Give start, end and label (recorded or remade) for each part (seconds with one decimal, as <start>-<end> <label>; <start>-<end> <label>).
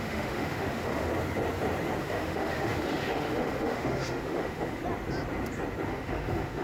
0.0-1.1 remade; 1.1-2.0 recorded; 2.0-4.8 remade; 4.8-5.9 recorded; 5.9-6.6 remade